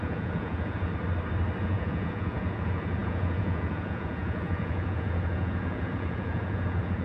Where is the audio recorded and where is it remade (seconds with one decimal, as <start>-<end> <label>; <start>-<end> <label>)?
0.0-0.9 remade; 0.9-1.6 recorded; 1.6-7.0 remade